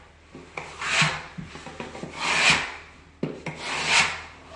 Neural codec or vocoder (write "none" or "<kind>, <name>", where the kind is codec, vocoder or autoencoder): none